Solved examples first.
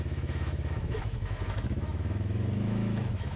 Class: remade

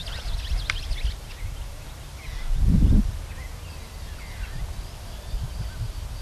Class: recorded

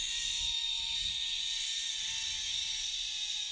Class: recorded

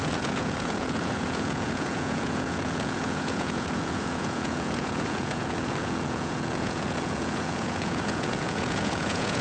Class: remade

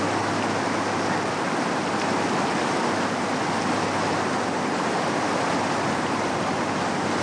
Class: recorded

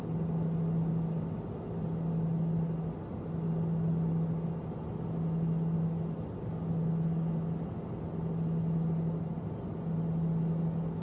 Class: recorded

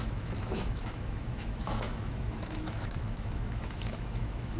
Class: remade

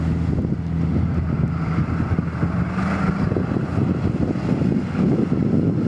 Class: recorded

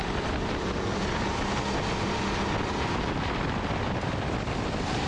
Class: recorded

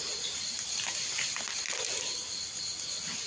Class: recorded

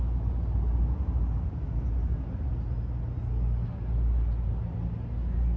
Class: recorded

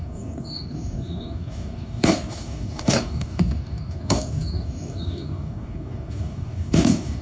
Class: remade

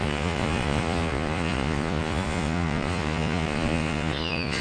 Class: remade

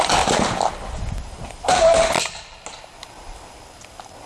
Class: recorded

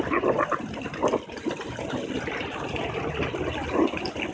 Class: recorded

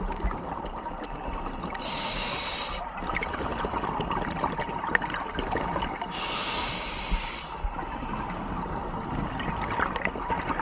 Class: recorded